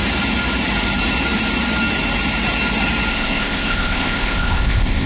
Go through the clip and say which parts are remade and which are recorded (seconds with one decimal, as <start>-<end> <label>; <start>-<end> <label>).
0.0-3.1 recorded; 3.1-5.1 remade